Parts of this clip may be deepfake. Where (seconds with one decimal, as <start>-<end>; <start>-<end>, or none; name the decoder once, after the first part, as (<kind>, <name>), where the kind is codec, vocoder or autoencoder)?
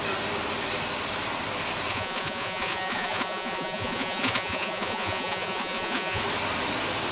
1.9-6.2 (vocoder, Vocos)